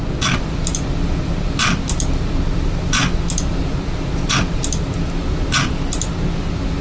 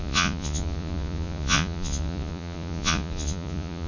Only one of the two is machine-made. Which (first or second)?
second